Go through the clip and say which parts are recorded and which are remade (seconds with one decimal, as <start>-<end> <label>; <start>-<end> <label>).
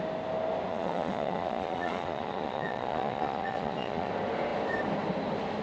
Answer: 0.0-0.7 recorded; 0.7-4.1 remade; 4.1-5.6 recorded